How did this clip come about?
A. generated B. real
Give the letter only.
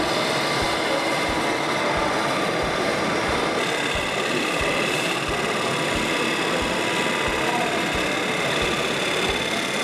B